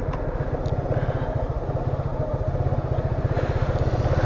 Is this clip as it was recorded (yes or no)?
yes